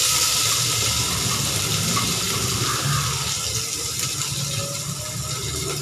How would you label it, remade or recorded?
recorded